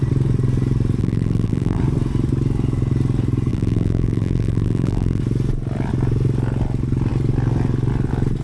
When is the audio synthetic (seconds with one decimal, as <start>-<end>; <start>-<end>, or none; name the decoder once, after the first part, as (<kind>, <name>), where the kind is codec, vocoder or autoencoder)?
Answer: 1.0-1.8 (vocoder, BigVGAN v2); 3.5-5.2

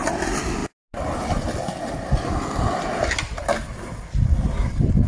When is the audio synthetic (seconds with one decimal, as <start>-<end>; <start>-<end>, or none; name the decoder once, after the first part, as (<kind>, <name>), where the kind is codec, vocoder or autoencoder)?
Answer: none

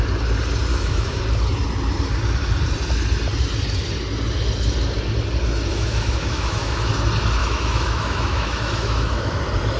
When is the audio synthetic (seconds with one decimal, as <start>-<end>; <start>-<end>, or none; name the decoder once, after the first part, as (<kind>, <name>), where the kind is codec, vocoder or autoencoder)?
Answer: 0.7-1.2 (autoencoder, DAC-VAE); 5.7-6.9; 7.4-9.4

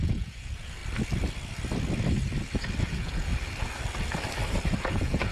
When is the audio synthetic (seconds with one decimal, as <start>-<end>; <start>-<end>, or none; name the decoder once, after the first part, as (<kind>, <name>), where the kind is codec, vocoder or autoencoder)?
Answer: 0.0-0.8 (vocoder, Vocos); 2.8-3.3; 4.8-5.3

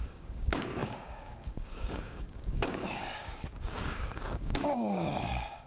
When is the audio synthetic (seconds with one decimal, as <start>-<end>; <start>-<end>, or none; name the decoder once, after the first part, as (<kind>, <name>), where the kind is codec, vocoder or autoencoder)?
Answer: 0.0-5.7 (codec, DAC)

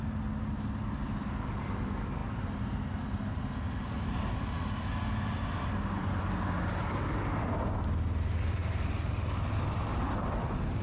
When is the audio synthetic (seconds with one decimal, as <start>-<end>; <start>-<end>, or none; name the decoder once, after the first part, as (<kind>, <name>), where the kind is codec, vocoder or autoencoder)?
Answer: none